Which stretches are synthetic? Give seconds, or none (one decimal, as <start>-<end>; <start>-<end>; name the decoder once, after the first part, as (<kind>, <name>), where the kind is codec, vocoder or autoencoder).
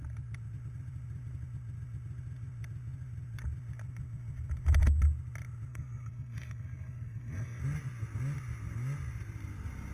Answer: 5.7-7.6 (codec, SNAC)